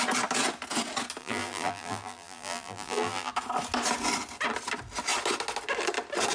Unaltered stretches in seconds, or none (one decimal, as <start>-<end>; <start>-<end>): 0.0-1.2; 3.3-6.3